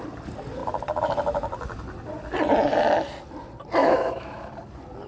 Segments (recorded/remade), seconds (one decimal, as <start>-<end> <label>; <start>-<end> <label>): 0.0-3.8 recorded; 3.8-4.5 remade; 4.5-5.1 recorded